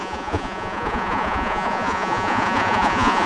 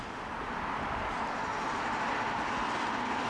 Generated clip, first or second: first